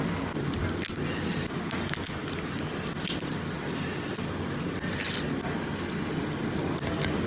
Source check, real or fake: real